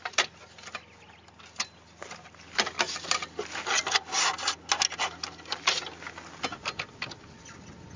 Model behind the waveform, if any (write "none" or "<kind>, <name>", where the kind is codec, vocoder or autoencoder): none